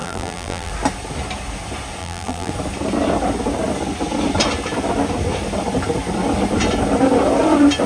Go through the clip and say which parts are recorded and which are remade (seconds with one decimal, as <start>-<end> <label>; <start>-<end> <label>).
0.0-0.7 remade; 0.7-2.0 recorded; 2.0-2.5 remade; 2.5-7.9 recorded